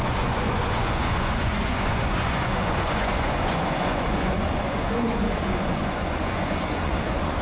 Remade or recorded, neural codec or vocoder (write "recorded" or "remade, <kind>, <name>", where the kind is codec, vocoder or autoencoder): remade, vocoder, Vocos